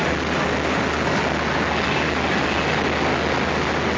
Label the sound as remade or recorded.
recorded